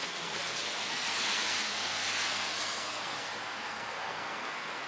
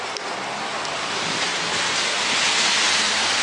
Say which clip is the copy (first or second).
first